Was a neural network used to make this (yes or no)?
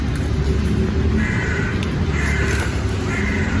no